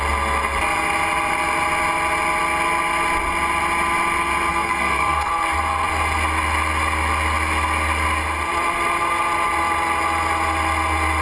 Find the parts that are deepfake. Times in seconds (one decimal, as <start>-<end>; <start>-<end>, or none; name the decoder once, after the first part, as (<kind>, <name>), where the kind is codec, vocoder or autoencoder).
4.5-5.3 (codec, SNAC)